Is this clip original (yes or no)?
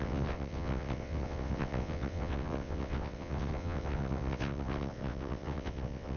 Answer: no